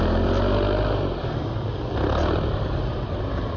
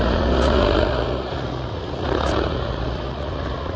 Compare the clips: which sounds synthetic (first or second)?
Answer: second